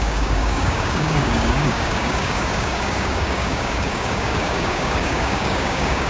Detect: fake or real fake